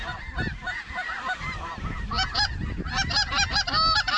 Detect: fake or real real